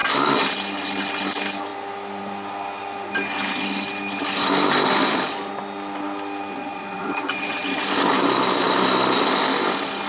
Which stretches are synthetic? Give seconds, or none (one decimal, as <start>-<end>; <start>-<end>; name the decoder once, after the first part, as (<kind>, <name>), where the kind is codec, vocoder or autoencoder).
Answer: 6.6-7.8 (vocoder, Vocos)